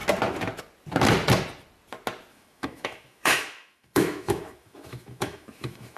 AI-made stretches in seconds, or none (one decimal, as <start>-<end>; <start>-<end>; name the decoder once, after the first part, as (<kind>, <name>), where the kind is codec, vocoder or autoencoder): 2.3-6.0 (autoencoder, DAC-VAE)

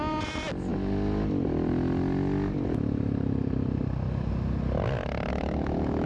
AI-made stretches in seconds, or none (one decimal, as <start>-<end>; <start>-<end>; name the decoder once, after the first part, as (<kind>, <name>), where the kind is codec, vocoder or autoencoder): 5.3-6.1 (autoencoder, DAC-VAE)

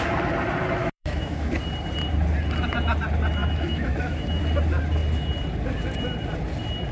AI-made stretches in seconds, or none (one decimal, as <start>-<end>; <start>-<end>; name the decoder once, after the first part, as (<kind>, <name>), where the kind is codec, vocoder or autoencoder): 0.8-1.5 (autoencoder, DAC-VAE); 3.4-4.4

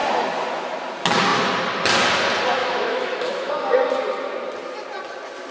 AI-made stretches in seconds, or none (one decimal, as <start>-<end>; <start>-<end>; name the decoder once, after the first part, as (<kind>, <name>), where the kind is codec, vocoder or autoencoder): 2.6-3.5 (autoencoder, DAC-VAE)

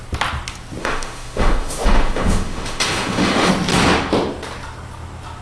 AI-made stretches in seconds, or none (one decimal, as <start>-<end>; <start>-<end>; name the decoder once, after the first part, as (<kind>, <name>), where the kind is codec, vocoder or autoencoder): 0.8-3.5 (autoencoder, DAC-VAE)

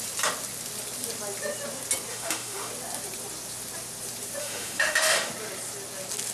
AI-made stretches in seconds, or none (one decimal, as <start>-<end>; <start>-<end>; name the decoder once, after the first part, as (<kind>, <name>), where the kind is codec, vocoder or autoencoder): 2.1-2.7 (autoencoder, DAC-VAE); 4.4-5.3

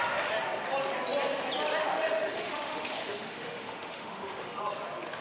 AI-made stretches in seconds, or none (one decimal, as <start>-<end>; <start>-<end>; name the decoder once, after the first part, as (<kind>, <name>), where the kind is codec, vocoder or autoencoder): 1.8-4.6 (autoencoder, DAC-VAE)